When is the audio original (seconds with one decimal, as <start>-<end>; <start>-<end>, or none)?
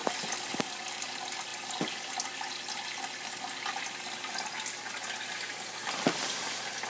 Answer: 0.0-6.9